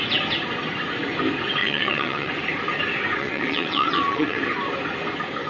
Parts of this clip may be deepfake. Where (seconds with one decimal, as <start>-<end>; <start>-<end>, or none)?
1.6-2.4; 3.2-4.4